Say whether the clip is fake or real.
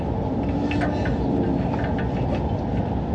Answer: real